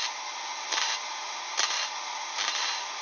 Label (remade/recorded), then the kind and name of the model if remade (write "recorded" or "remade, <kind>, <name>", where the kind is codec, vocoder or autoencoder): recorded